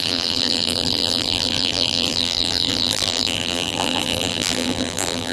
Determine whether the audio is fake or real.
fake